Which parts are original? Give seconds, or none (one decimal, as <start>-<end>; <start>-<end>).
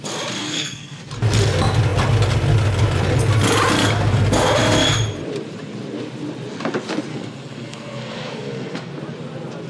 0.0-0.4; 1.1-7.1; 8.9-9.7